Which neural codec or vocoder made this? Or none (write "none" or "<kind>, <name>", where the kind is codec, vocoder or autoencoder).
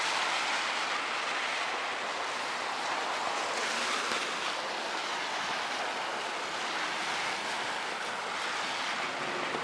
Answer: none